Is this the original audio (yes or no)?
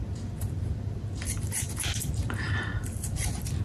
no